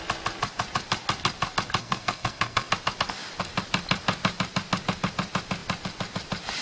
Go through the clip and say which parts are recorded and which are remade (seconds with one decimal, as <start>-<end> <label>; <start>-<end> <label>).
0.0-1.8 recorded; 1.8-2.7 remade; 2.7-6.6 recorded